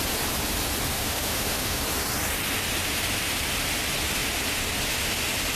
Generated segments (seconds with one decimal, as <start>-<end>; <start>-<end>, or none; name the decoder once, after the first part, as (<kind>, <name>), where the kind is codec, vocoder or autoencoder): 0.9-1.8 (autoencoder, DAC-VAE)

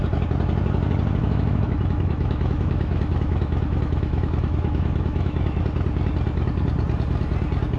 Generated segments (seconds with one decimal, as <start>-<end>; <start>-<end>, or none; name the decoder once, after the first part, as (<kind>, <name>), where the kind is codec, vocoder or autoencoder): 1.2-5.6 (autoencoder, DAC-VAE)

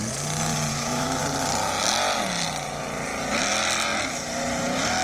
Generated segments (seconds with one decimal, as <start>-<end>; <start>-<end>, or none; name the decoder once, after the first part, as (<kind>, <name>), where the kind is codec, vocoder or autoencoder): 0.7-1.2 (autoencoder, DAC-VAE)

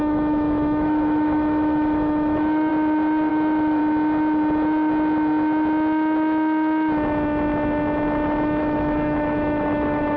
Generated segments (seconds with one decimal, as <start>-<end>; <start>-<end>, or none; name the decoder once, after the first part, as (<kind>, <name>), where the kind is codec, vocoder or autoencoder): 0.0-2.7 (autoencoder, DAC-VAE); 3.3-3.8; 8.6-10.2

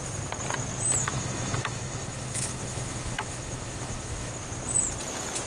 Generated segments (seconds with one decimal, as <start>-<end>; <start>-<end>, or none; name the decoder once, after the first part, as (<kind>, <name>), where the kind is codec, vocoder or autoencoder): 1.0-4.3 (autoencoder, DAC-VAE)